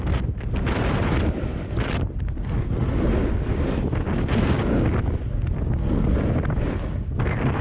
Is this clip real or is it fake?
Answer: real